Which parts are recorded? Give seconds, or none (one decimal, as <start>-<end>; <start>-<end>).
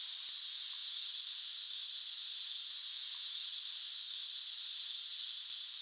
0.0-5.8